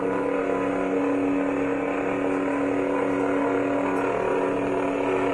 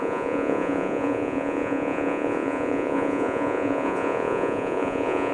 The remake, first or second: second